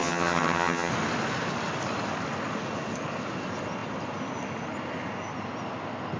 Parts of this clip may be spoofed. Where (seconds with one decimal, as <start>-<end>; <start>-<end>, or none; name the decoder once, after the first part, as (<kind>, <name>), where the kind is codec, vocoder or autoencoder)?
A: 0.0-0.9 (vocoder, HiFi-GAN)